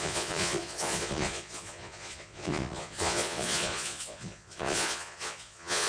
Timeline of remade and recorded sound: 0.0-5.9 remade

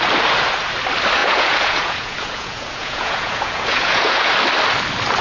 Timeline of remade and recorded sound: 0.0-1.2 recorded; 1.2-4.3 remade; 4.3-5.2 recorded

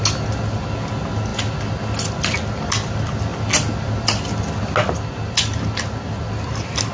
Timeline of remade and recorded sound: 0.0-6.9 recorded

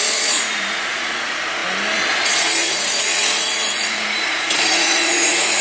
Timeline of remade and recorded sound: 0.0-1.6 remade; 1.6-2.3 recorded; 2.3-5.6 remade

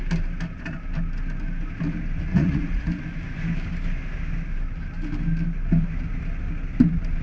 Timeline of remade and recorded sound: 0.0-2.3 recorded; 2.3-2.9 remade; 2.9-7.2 recorded

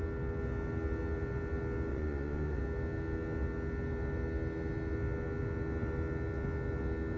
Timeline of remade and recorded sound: 0.0-1.9 recorded; 1.9-2.6 remade; 2.6-7.2 recorded

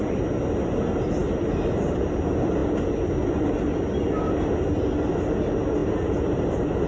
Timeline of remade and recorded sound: 0.0-6.9 recorded